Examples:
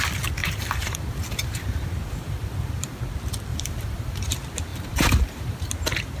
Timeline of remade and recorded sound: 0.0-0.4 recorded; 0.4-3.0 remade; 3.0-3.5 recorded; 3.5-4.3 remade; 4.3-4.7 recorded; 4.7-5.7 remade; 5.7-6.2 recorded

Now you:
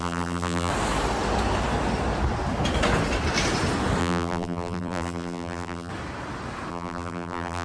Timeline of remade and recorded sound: 0.0-0.7 remade; 0.7-4.0 recorded; 4.0-5.9 remade; 5.9-6.7 recorded; 6.7-7.6 remade

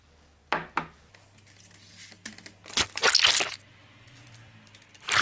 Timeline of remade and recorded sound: 0.0-0.4 remade; 0.4-3.5 recorded; 3.5-5.2 remade

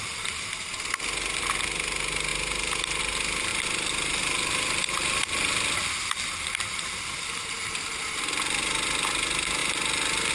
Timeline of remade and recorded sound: 0.0-3.5 recorded; 3.5-4.2 remade; 4.2-10.3 recorded

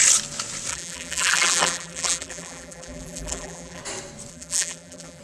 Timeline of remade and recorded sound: 0.0-0.7 recorded; 0.7-3.8 remade; 3.8-4.3 recorded; 4.3-5.2 remade

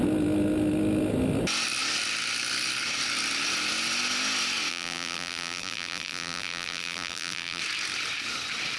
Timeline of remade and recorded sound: 0.0-4.7 recorded; 4.7-7.6 remade; 7.6-8.8 recorded